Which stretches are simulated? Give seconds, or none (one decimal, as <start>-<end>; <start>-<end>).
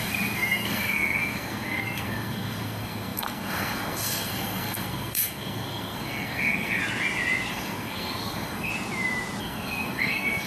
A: 0.0-6.8; 7.5-8.7; 9.4-10.5